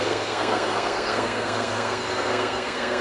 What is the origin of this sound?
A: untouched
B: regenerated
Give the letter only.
B